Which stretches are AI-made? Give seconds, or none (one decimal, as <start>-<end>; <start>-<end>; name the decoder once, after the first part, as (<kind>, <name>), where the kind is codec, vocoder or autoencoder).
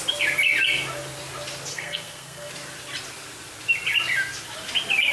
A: 1.7-2.5 (codec, SNAC)